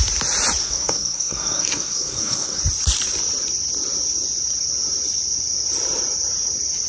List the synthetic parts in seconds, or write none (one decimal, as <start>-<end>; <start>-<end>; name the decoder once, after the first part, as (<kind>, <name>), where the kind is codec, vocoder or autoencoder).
0.6-2.6 (codec, SNAC)